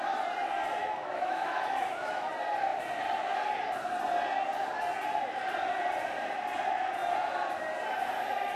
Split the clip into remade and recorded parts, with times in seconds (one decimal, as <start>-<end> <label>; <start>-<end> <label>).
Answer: 0.0-0.8 recorded; 0.8-2.3 remade; 2.3-8.6 recorded